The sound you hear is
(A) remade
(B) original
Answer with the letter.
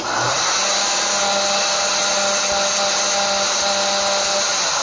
B